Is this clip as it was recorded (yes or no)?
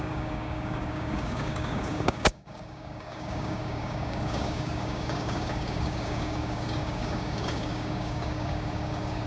no